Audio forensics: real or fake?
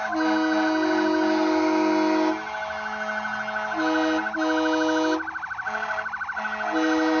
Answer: real